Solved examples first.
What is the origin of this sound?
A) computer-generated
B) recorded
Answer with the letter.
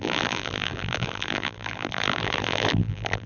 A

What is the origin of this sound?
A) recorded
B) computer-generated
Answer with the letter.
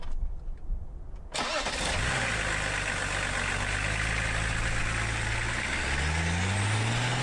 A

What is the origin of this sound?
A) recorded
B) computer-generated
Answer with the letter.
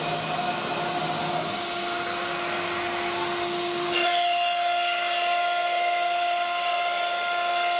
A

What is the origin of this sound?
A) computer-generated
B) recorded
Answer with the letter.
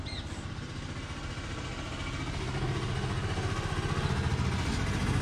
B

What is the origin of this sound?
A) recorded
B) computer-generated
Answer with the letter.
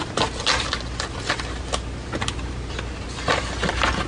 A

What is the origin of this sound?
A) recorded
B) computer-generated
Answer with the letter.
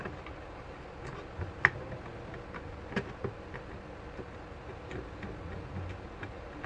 A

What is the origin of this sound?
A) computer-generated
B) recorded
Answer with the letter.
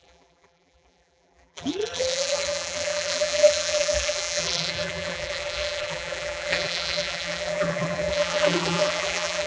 A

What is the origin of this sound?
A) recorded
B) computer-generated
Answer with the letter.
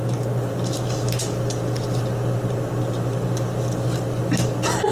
A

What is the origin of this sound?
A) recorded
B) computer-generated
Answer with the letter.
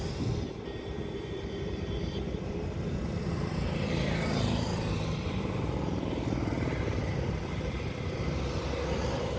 B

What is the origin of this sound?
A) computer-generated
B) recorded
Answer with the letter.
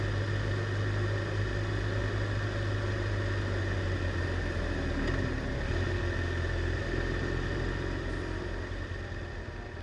B